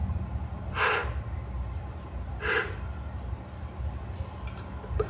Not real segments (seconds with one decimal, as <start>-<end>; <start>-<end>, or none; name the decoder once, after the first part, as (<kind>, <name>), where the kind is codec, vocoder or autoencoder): none